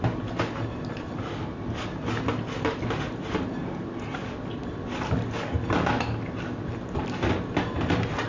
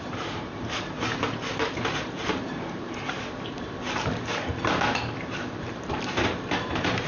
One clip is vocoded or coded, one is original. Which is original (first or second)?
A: first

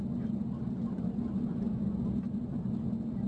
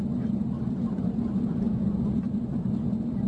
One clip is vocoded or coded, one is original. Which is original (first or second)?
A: first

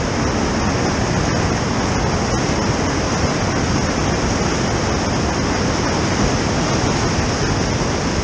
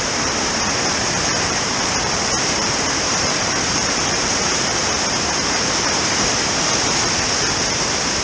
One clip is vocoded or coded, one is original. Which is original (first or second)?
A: first